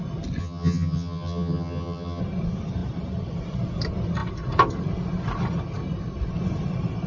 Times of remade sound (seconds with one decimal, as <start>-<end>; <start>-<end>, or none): 0.4-2.2